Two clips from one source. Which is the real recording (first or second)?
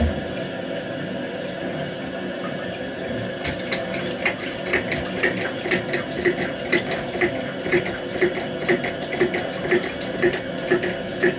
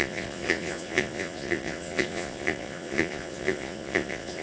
first